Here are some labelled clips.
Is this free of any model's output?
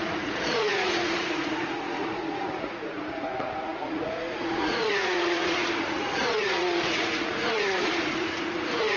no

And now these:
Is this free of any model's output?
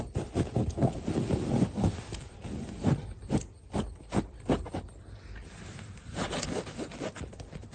yes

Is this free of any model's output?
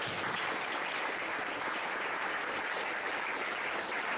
no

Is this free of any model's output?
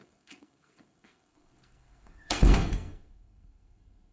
no